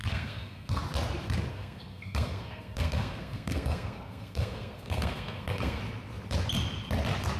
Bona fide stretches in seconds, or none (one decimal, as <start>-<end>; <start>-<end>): 0.8-1.5; 5.8-7.4